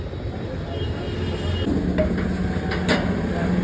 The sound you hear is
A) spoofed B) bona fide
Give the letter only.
B